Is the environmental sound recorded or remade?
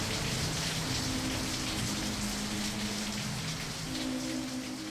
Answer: recorded